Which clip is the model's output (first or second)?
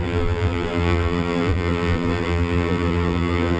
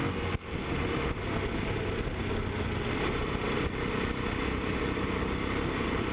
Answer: first